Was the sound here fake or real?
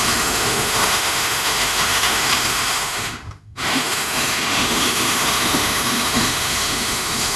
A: fake